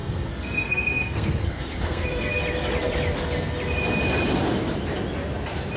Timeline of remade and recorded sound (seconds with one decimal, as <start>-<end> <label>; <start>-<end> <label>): 0.0-2.3 remade; 2.3-5.8 recorded